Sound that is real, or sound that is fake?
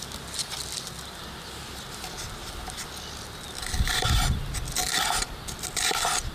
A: real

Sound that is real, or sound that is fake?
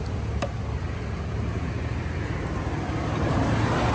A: real